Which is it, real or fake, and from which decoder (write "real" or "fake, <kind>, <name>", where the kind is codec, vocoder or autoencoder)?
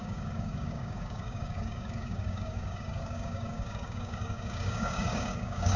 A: fake, codec, DAC